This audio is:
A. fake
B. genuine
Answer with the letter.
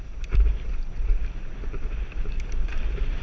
B